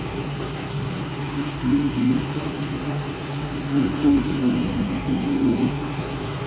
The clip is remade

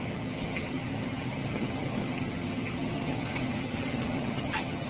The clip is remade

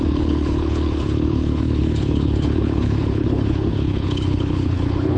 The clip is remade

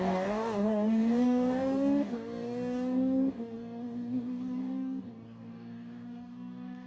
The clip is remade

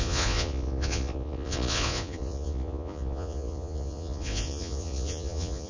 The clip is remade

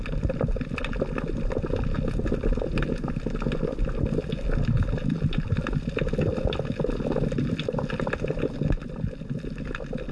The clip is recorded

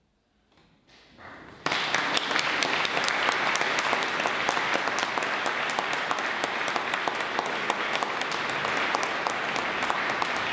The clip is recorded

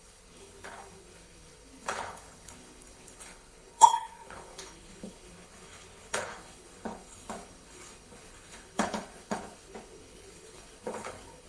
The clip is remade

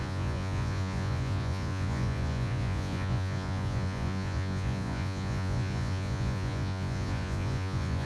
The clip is remade